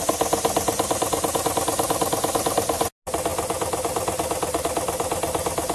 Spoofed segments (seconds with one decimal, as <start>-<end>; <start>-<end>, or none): none